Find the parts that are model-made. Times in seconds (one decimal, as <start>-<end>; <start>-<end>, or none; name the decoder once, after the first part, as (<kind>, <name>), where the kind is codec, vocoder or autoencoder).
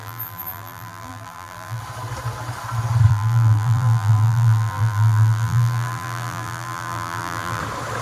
0.0-1.8 (vocoder, BigVGAN v2); 3.1-7.6